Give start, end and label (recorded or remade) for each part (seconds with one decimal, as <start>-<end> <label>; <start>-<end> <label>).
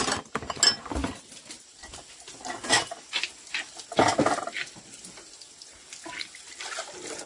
0.0-7.3 recorded